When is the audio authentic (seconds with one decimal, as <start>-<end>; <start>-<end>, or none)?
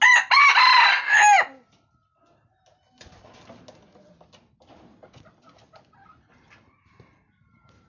0.0-7.9